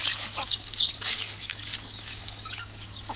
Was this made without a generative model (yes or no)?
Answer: no